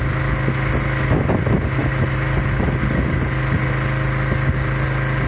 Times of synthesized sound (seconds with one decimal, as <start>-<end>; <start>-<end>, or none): none